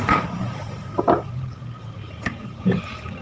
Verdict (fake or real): fake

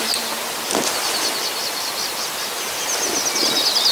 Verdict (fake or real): real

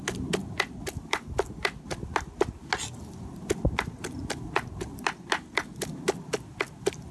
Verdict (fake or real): real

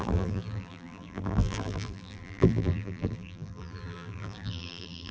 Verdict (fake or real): fake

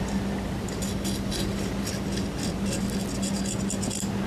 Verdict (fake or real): real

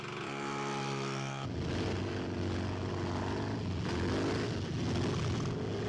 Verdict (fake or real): real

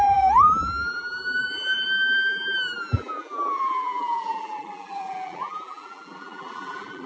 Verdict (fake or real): fake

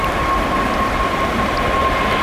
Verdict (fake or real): fake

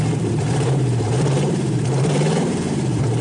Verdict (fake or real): fake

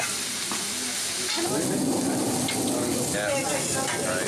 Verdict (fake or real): real